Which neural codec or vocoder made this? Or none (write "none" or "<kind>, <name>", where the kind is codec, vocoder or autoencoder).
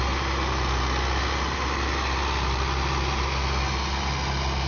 none